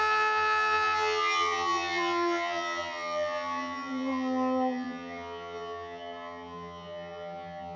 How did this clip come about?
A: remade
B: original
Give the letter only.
A